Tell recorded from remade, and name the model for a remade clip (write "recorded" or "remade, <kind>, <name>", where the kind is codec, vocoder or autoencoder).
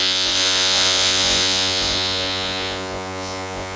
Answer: remade, vocoder, Vocos